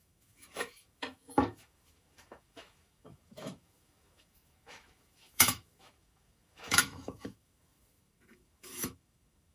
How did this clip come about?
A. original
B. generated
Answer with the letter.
B